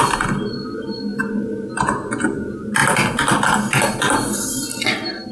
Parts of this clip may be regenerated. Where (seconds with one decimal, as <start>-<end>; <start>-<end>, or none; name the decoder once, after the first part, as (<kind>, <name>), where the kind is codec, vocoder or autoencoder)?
none